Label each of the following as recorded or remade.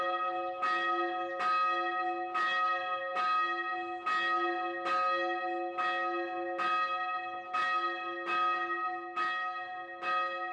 recorded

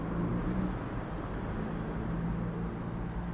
recorded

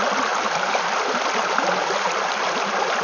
recorded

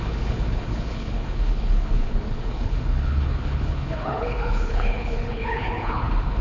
remade